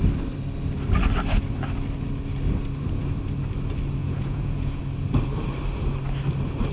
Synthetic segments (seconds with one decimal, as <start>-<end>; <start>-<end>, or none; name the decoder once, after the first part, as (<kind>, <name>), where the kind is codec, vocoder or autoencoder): 4.0-4.8 (vocoder, Vocos)